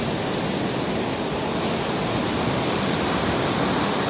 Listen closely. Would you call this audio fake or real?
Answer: real